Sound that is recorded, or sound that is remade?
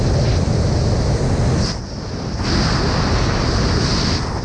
recorded